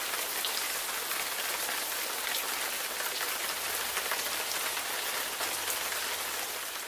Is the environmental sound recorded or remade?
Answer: recorded